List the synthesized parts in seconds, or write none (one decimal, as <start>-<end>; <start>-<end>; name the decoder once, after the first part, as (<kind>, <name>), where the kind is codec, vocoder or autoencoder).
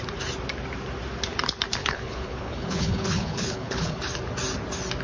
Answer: 1.8-4.0 (codec, HILCodec)